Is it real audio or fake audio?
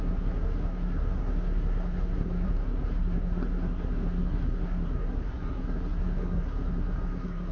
fake